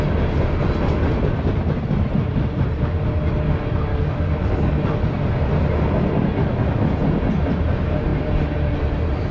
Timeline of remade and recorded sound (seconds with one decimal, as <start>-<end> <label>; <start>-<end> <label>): 0.0-3.9 recorded; 3.9-5.0 remade; 5.0-9.3 recorded